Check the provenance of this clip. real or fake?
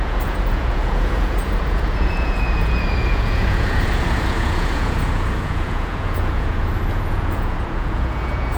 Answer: fake